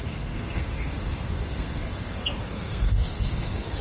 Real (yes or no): no